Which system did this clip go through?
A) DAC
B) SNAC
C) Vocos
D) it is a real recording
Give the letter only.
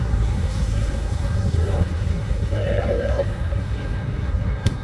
B